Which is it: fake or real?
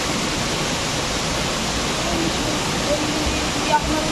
real